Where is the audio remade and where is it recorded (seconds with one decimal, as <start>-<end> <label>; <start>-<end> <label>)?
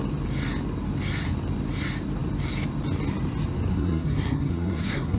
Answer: 0.0-3.7 recorded; 3.7-5.2 remade